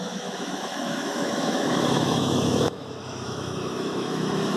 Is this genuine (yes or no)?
no